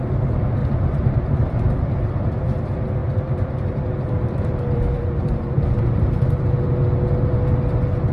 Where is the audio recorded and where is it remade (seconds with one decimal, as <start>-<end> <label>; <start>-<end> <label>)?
0.0-0.6 recorded; 0.6-1.7 remade; 1.7-3.0 recorded; 3.0-6.7 remade; 6.7-8.1 recorded